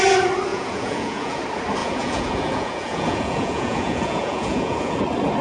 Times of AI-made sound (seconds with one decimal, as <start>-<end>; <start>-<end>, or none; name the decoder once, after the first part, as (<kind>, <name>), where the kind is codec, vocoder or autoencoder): 0.5-1.4 (vocoder, Vocos); 1.8-5.0